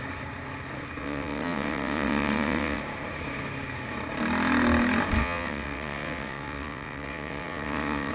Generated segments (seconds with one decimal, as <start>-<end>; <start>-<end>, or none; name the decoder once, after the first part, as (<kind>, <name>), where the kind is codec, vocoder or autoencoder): 1.0-2.8 (vocoder, WaveNeXt); 5.2-8.1